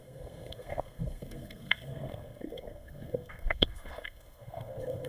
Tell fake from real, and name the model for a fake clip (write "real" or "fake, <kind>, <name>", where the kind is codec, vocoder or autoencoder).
fake, codec, SNAC